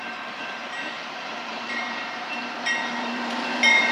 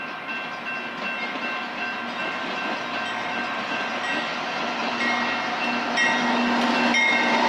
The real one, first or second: second